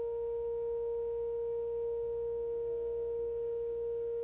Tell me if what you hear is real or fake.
fake